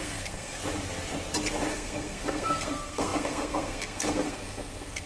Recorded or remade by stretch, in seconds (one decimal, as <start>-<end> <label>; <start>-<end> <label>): 0.0-0.6 remade; 0.6-1.7 recorded; 1.7-5.1 remade